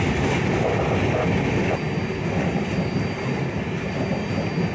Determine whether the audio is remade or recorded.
recorded